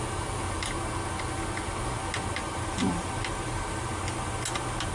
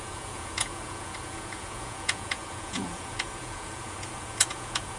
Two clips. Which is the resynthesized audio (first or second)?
second